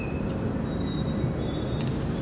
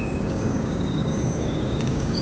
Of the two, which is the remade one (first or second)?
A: second